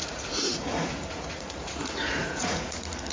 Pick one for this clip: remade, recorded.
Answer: remade